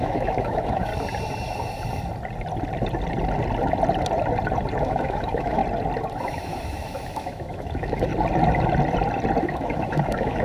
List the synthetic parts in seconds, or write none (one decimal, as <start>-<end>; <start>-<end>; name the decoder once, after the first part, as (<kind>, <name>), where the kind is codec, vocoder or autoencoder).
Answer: 0.0-0.9 (autoencoder, DAC-VAE); 4.8-5.6; 6.3-8.1; 9.4-10.4